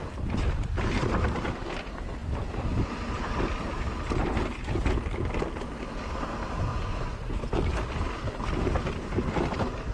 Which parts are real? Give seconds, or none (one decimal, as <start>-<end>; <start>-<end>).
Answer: 0.0-6.7; 7.4-9.9